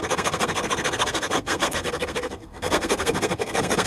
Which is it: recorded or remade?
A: remade